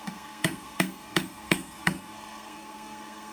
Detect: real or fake fake